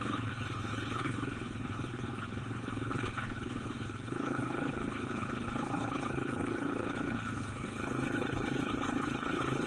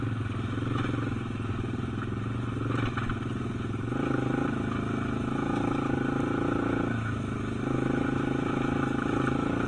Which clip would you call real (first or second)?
second